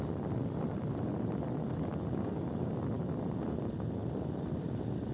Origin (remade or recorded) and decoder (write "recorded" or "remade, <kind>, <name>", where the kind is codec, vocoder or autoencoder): recorded